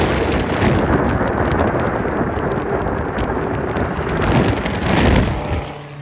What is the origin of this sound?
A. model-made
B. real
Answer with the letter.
B